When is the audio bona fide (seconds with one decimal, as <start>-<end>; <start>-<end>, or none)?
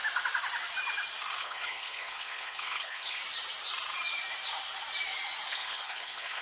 0.0-1.4; 3.2-5.5